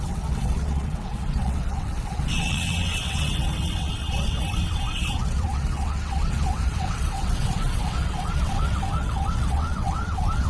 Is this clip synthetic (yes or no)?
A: yes